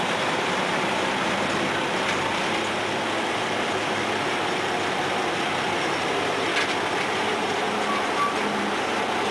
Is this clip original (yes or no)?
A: yes